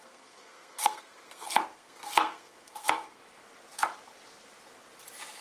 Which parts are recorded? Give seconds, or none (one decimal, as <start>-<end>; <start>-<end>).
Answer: 3.2-5.4